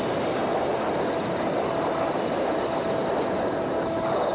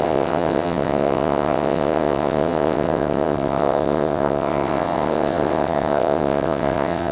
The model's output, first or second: second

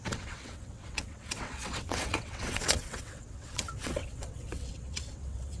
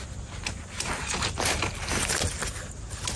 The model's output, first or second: first